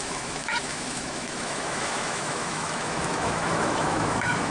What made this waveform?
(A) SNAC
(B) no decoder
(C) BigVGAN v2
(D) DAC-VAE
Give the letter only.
D